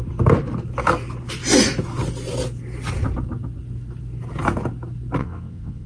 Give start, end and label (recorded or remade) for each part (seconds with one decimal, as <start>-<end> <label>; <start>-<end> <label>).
0.0-5.2 recorded; 5.2-5.9 remade